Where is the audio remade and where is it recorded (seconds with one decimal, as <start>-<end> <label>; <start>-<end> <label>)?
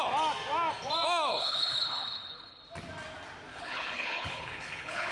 0.0-1.3 recorded; 1.3-2.6 remade; 2.6-3.5 recorded; 3.5-5.1 remade